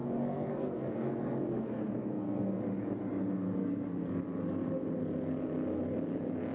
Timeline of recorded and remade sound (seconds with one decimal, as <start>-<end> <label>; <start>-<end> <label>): 0.0-2.6 remade; 2.6-3.6 recorded; 3.6-4.1 remade; 4.1-6.5 recorded